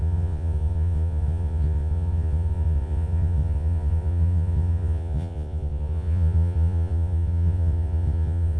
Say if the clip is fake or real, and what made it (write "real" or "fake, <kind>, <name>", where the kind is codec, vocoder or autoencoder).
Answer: fake, vocoder, Vocos